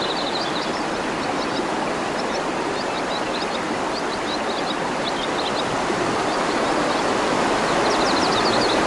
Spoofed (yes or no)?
no